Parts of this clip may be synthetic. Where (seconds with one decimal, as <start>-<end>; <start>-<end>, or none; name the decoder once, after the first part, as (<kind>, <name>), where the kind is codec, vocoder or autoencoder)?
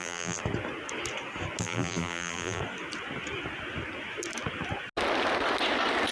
0.0-0.4 (vocoder, BigVGAN v2); 1.6-2.6